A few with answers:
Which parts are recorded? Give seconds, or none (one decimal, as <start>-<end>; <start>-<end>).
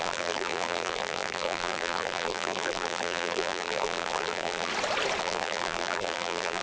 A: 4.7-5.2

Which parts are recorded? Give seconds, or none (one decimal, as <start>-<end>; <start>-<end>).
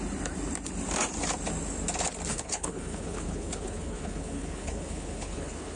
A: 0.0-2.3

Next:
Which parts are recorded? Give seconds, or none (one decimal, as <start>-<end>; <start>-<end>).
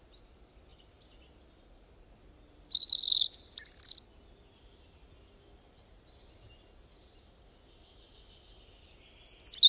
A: 0.0-9.7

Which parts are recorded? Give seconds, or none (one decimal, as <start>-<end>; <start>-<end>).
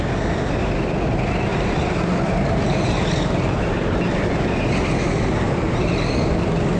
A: 0.0-1.5; 4.7-6.8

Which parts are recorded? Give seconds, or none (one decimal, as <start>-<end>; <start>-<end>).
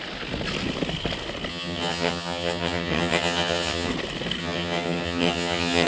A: 0.0-1.5; 3.9-4.4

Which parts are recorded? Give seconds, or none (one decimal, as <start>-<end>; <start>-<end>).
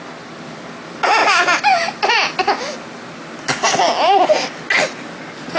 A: 0.0-5.6